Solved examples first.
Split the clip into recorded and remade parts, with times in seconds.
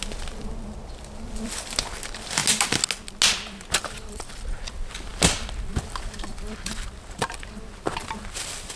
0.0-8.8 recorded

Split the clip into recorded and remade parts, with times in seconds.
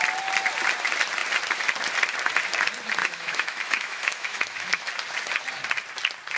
0.0-3.0 recorded; 3.0-4.9 remade; 4.9-6.4 recorded